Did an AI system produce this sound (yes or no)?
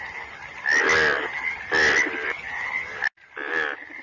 no